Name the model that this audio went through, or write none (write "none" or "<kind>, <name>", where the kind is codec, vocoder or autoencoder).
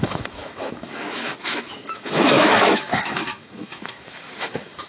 autoencoder, DAC-VAE